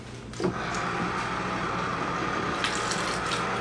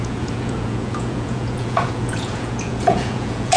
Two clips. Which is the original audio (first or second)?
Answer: first